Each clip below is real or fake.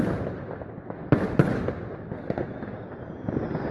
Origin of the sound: real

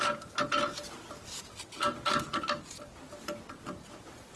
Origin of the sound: real